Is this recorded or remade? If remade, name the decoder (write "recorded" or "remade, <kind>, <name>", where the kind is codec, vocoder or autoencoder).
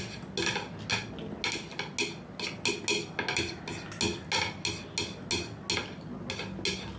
recorded